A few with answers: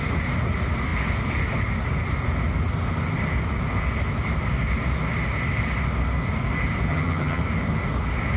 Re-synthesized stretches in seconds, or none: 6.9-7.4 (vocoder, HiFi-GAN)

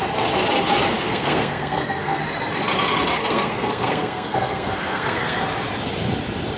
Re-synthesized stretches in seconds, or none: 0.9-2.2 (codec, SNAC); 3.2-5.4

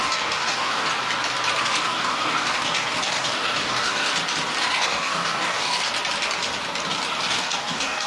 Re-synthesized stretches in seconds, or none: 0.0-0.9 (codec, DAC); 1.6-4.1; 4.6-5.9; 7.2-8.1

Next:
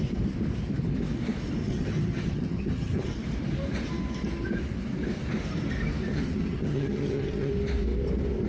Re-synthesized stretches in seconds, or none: 1.6-3.1 (vocoder, HiFi-GAN); 6.1-7.5

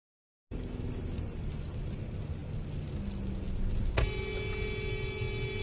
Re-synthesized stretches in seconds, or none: none

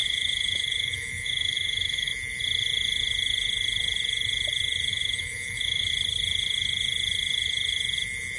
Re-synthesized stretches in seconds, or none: 0.0-2.1 (autoencoder, DAC-VAE); 4.9-5.9

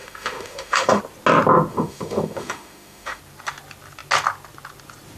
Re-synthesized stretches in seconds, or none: 0.0-1.0 (autoencoder, DAC-VAE); 1.7-3.2